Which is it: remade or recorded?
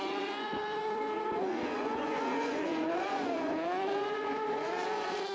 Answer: remade